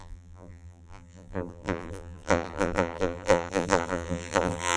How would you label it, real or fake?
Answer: fake